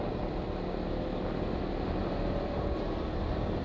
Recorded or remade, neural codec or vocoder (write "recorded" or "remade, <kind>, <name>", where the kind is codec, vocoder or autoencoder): recorded